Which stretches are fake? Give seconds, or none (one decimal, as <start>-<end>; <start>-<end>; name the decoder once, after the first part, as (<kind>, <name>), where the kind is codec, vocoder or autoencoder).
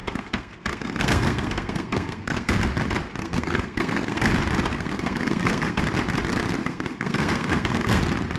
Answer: 0.0-2.5 (codec, SNAC); 3.2-4.3; 4.7-5.8; 6.6-8.0